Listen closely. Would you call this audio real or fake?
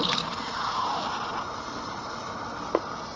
real